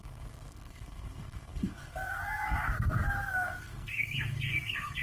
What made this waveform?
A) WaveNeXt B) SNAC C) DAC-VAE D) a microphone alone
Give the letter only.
B